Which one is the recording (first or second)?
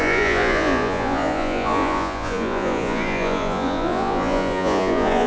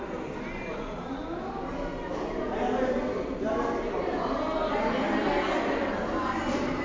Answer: second